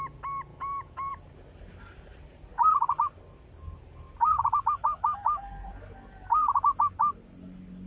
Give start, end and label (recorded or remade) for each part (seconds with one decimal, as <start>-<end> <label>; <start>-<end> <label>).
0.0-0.5 recorded; 0.5-1.1 remade; 1.1-7.9 recorded